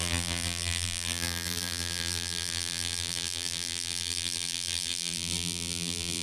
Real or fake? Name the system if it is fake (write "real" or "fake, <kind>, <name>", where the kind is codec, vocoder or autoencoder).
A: fake, vocoder, BigVGAN v2